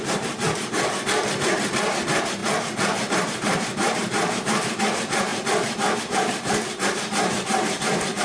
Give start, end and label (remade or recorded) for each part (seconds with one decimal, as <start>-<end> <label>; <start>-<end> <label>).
0.0-5.3 remade; 5.3-6.0 recorded; 6.0-8.2 remade